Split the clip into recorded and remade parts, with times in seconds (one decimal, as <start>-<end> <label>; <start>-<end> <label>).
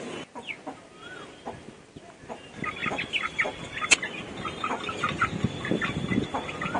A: 0.0-6.8 recorded